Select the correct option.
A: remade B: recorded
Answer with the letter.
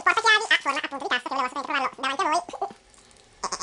B